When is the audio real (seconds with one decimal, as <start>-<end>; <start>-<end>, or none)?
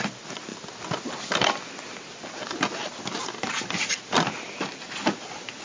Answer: 0.0-5.6